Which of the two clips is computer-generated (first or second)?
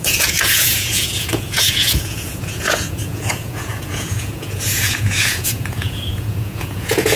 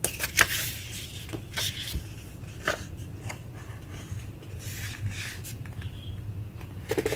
first